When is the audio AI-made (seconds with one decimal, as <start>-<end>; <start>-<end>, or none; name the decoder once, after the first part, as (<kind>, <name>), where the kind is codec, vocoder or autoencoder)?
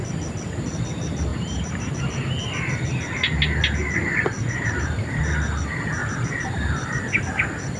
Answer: 1.3-1.9 (vocoder, BigVGAN v2); 4.4-5.2; 6.0-7.2